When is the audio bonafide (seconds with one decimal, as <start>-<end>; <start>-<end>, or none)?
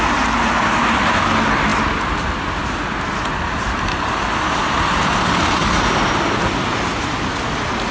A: 0.0-7.9